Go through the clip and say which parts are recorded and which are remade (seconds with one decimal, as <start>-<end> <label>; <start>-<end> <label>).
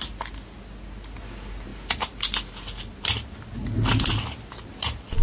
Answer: 0.0-5.2 recorded